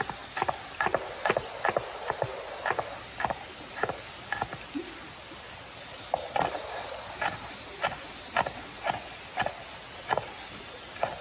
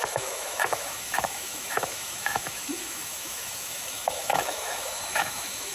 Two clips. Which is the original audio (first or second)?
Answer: first